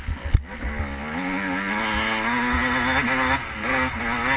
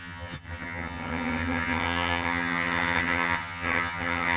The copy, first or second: second